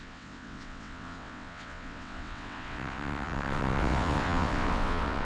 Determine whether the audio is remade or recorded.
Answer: remade